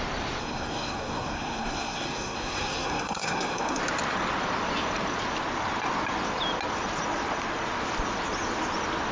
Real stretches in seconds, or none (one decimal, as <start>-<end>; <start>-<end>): 0.0-0.4; 3.8-9.1

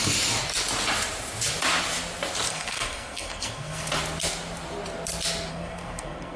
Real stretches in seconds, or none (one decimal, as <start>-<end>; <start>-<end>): 0.0-2.5; 3.9-5.5

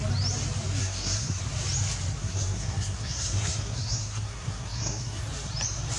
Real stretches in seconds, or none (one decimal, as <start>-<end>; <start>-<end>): 0.0-0.8; 1.4-2.2; 5.2-6.0